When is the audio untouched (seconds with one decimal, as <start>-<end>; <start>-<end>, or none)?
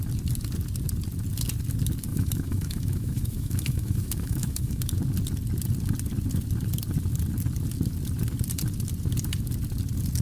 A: 0.0-2.1; 4.8-10.2